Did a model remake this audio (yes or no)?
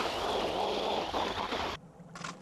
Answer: no